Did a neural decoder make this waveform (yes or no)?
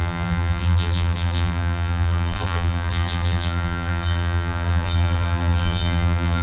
yes